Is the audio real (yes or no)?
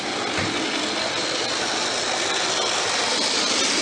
yes